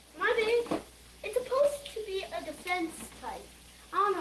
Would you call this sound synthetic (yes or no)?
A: no